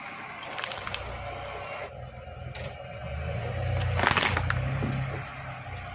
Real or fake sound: real